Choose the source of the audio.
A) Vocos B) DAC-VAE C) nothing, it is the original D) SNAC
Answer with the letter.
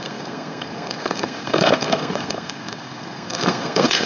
D